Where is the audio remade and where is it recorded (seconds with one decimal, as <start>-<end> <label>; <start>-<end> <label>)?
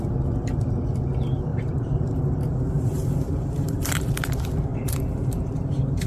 0.0-1.5 recorded; 1.5-4.1 remade; 4.1-4.7 recorded; 4.7-6.1 remade